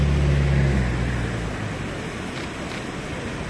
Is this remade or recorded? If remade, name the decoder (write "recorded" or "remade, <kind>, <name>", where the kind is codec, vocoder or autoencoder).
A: recorded